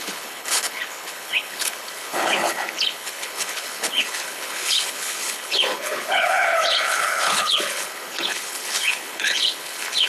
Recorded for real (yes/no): no